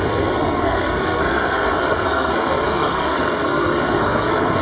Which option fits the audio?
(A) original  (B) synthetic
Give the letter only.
B